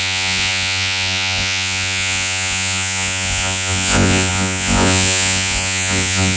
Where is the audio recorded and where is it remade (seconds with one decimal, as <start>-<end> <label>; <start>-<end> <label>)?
0.0-6.4 remade